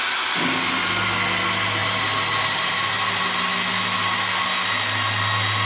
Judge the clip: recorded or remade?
recorded